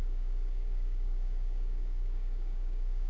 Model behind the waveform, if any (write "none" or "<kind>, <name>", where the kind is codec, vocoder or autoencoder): codec, DAC